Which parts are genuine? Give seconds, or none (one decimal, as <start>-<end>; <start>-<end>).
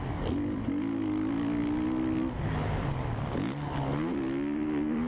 0.0-5.1